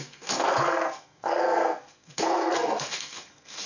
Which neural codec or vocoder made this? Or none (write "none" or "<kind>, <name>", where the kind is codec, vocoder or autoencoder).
codec, SNAC